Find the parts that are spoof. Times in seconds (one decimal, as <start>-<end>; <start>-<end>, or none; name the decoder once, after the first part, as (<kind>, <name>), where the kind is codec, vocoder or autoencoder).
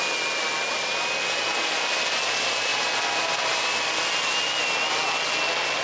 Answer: none